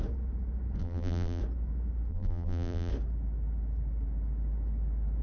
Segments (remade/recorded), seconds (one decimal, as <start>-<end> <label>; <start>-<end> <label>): 0.0-0.8 recorded; 0.8-1.4 remade; 1.4-2.1 recorded; 2.1-2.9 remade; 2.9-5.2 recorded